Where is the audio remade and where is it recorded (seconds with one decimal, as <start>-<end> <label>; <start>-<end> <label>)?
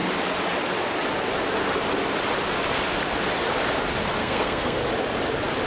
0.0-4.2 recorded; 4.2-4.8 remade; 4.8-5.7 recorded